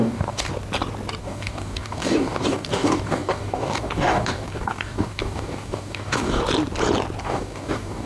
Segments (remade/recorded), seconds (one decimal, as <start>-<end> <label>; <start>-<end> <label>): 0.0-0.5 remade; 0.5-1.2 recorded; 1.2-6.4 remade; 6.4-7.2 recorded; 7.2-8.1 remade